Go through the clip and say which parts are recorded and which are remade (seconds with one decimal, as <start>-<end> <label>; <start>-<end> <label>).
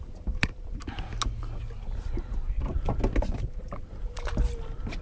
0.0-0.8 remade; 0.8-3.2 recorded; 3.2-4.3 remade; 4.3-5.0 recorded